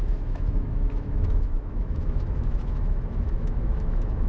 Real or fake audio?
fake